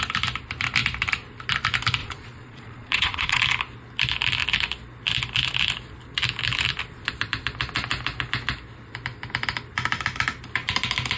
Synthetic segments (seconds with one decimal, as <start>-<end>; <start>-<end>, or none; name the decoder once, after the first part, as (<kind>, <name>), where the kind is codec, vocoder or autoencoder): 2.0-3.4 (vocoder, Vocos)